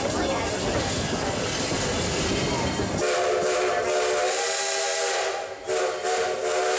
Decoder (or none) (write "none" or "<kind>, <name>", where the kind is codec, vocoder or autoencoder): none